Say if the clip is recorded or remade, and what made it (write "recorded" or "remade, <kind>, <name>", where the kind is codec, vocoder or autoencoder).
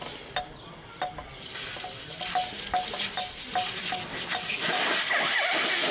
recorded